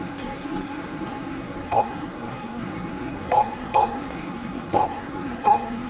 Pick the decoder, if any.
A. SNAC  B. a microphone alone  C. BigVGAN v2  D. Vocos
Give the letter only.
A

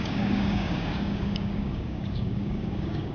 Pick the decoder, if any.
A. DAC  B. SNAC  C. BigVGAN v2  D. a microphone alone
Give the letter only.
A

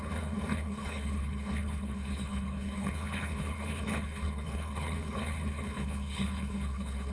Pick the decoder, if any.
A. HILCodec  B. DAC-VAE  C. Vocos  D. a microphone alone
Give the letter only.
A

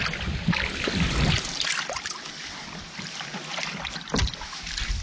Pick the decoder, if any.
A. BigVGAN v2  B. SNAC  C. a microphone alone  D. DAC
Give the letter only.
C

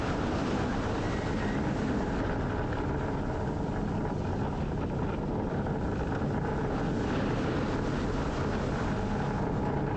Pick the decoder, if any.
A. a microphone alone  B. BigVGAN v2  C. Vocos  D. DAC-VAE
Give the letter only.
A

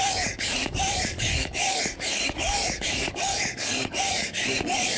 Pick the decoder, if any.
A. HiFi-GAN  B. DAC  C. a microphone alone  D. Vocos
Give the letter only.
B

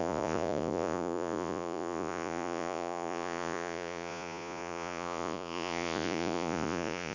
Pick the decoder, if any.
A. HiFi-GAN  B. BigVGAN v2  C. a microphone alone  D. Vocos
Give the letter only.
D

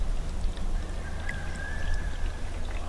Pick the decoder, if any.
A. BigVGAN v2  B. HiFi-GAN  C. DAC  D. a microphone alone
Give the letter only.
D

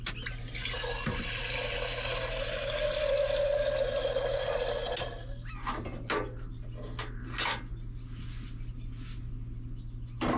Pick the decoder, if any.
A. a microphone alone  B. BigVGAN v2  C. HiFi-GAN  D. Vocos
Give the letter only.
A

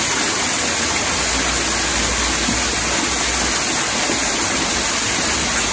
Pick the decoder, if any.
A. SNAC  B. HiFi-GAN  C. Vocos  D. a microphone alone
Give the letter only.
D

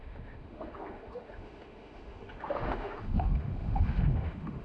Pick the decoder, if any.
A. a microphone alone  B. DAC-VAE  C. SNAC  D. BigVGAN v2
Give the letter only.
B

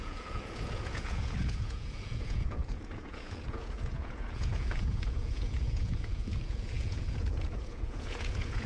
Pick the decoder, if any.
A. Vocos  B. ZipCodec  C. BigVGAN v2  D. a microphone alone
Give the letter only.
A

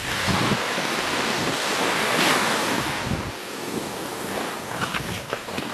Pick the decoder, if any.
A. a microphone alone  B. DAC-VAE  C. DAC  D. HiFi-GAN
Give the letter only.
C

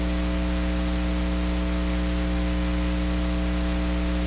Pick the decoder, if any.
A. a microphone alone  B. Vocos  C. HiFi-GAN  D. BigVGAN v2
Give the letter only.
A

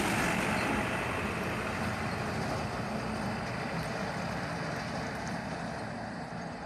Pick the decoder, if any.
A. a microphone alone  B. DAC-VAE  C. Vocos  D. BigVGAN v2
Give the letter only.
A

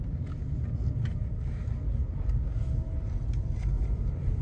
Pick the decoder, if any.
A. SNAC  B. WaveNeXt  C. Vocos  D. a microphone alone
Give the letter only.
D